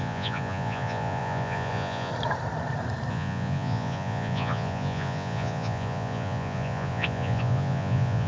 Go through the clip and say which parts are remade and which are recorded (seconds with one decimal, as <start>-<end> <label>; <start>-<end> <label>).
0.0-2.1 remade; 2.1-3.1 recorded; 3.1-8.3 remade